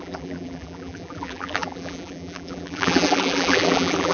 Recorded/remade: remade